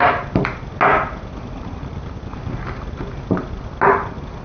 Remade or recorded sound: recorded